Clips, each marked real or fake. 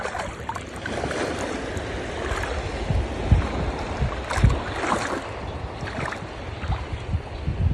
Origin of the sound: real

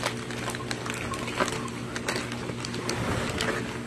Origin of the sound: real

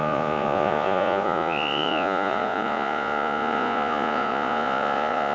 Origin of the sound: fake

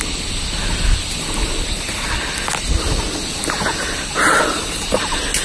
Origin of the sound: real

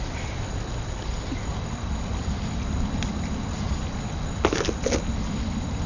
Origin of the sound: real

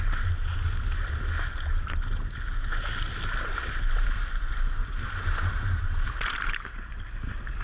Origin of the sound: real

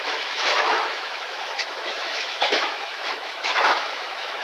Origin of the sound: fake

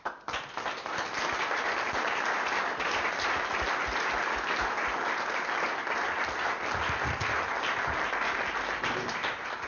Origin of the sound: real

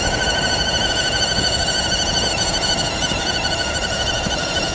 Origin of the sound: fake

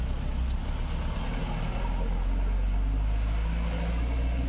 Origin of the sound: real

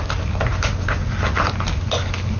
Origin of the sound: real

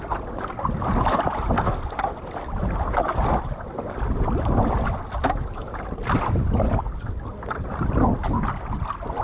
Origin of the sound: real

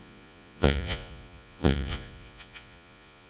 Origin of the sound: fake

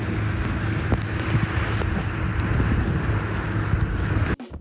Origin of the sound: real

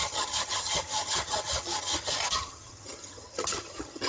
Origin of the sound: fake